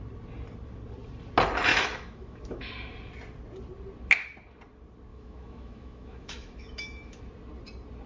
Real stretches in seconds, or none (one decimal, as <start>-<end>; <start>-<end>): 0.0-1.7; 2.7-5.1; 7.2-8.1